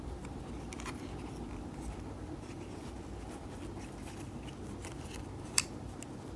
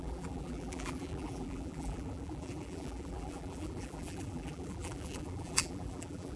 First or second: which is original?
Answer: first